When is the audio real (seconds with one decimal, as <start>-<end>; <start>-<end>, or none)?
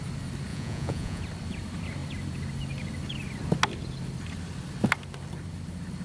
0.0-0.5; 1.2-6.0